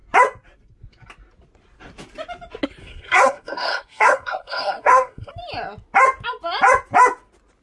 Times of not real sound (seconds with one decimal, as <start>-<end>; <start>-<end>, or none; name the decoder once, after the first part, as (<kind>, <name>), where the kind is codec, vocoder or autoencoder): 2.8-5.3 (codec, SNAC)